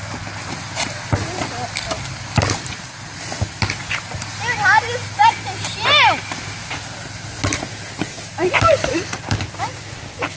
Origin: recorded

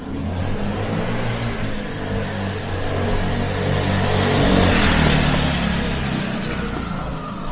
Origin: recorded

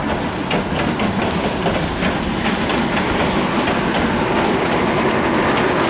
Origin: recorded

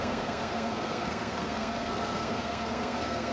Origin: remade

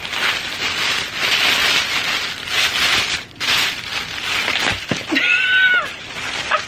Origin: recorded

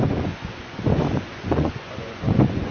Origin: remade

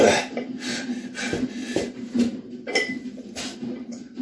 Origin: recorded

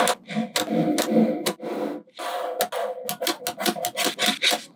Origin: recorded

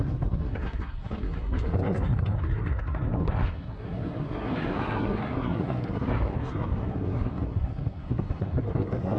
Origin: remade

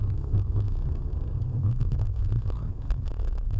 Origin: remade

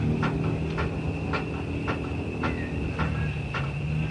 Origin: recorded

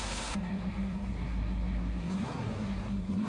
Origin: remade